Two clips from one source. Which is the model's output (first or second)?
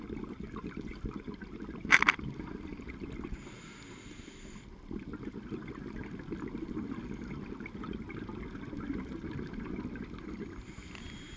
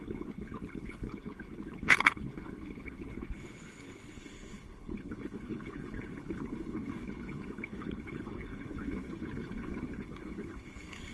second